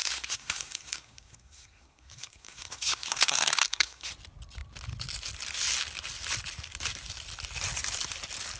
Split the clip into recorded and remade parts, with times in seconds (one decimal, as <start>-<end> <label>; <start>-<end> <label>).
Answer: 0.0-4.1 remade; 4.1-8.6 recorded